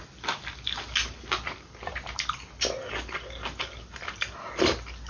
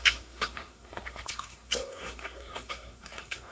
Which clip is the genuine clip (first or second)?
first